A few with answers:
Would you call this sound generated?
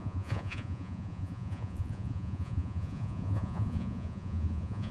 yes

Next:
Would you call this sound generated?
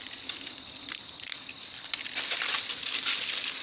no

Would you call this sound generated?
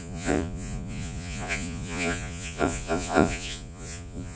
yes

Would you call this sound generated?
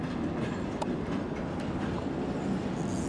no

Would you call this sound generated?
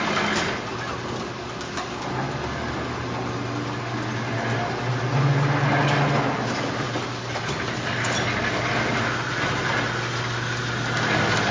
no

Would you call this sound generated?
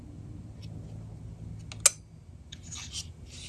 no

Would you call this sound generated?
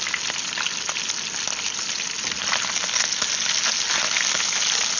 no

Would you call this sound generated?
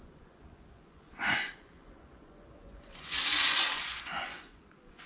yes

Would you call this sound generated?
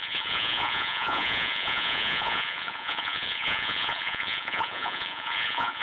yes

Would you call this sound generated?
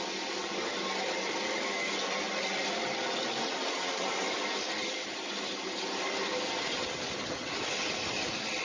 no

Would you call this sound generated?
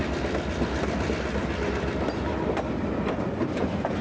no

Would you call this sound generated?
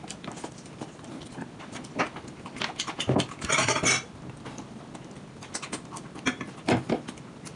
no